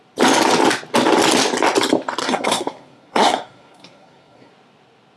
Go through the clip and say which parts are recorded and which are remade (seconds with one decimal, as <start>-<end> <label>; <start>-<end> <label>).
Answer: 0.0-2.2 recorded; 2.2-4.5 remade; 4.5-5.2 recorded